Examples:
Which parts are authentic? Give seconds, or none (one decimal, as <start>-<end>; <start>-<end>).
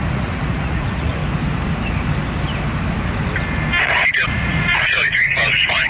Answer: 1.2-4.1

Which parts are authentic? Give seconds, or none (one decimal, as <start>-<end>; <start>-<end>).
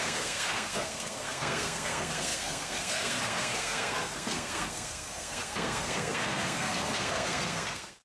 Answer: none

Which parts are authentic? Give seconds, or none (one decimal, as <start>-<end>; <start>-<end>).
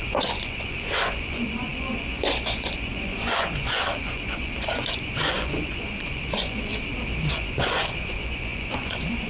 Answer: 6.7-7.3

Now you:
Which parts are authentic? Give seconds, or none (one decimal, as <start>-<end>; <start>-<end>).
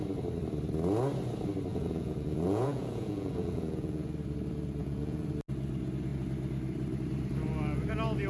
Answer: 0.0-1.7; 4.1-4.8; 5.3-8.3